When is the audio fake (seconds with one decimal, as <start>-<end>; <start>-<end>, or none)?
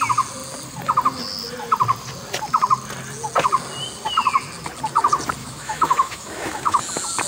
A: 5.4-6.8